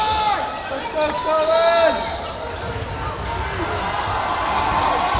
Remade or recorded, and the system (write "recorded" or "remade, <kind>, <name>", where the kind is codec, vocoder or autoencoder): recorded